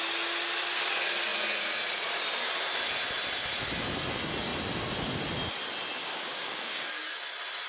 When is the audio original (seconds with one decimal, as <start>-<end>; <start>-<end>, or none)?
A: 0.0-6.0; 7.0-7.7

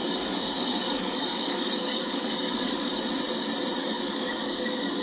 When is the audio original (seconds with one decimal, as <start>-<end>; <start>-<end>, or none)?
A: 3.0-3.8

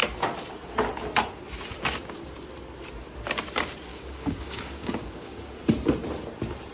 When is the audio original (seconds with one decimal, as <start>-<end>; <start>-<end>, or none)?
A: 0.0-3.9; 5.3-6.7

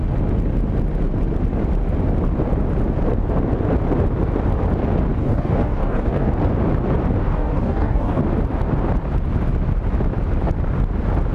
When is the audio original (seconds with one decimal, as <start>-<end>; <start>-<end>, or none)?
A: 0.0-5.2; 6.3-7.2; 8.2-11.3

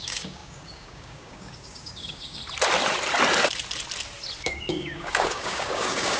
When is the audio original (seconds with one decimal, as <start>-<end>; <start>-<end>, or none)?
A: 2.4-4.4